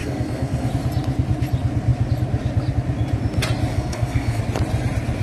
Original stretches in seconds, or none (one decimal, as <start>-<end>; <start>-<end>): 0.7-3.7; 4.4-5.2